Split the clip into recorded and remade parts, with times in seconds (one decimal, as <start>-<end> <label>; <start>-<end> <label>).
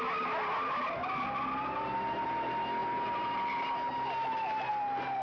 0.0-5.2 recorded